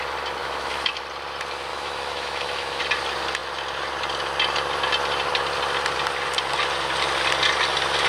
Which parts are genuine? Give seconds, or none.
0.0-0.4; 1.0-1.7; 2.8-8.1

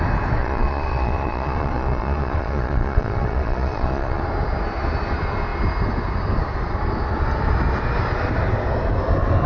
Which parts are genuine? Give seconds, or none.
0.0-0.4; 4.2-9.5

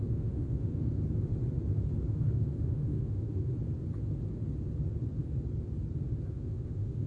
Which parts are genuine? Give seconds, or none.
1.0-2.1; 3.5-6.3

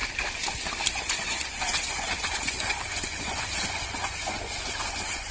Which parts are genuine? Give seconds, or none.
0.0-0.9

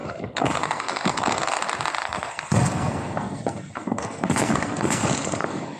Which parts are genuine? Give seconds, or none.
1.6-2.0

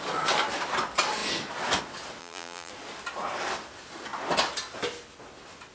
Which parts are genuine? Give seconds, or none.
0.0-2.2; 2.7-5.7

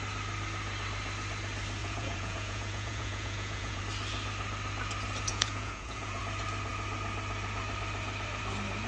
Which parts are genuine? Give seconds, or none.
0.0-1.8; 3.8-5.3; 6.2-8.9